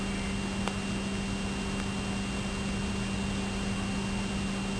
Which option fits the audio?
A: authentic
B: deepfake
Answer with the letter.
A